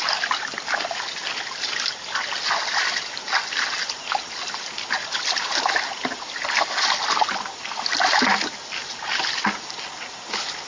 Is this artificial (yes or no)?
no